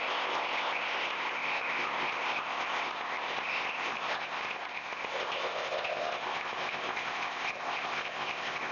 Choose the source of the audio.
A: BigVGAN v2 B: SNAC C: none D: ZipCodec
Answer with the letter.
D